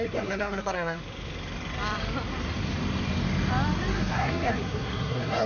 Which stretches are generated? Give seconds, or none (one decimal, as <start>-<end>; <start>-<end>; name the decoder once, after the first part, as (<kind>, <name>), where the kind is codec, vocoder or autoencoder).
0.0-1.0 (codec, SNAC); 3.9-5.5

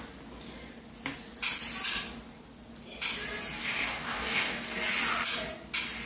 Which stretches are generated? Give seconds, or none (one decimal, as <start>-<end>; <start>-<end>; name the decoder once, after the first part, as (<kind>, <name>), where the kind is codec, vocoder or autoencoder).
3.6-4.8 (codec, DAC)

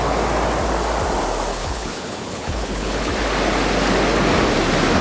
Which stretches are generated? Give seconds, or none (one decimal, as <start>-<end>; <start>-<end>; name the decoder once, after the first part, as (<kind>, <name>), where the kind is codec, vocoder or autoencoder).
1.5-3.1 (codec, HILCodec)

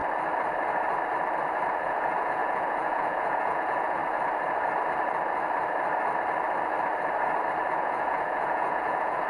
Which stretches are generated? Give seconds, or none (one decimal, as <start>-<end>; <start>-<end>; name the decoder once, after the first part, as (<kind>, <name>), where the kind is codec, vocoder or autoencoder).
1.7-4.0 (vocoder, Vocos); 7.7-9.3

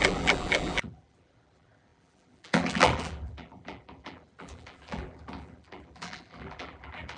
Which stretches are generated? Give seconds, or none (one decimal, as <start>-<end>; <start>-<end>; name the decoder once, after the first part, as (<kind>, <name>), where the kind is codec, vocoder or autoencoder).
0.0-7.2 (vocoder, BigVGAN v2)

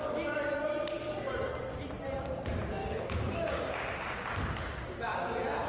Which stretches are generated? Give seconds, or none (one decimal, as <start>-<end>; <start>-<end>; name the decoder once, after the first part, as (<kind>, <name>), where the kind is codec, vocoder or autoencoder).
2.8-4.2 (codec, DAC)

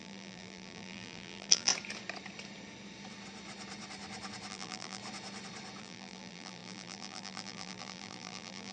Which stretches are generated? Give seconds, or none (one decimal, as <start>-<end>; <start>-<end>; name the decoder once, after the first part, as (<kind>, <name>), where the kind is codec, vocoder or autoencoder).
0.0-1.7 (vocoder, BigVGAN v2); 4.5-5.0; 5.8-8.7

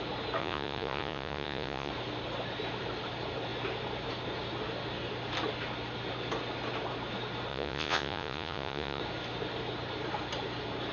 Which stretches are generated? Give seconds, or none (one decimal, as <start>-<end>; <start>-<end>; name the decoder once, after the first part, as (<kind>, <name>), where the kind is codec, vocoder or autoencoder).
0.4-1.9 (vocoder, Vocos); 7.5-9.0